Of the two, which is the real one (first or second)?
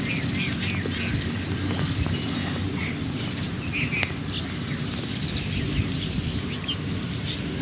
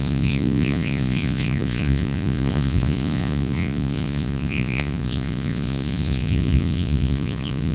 first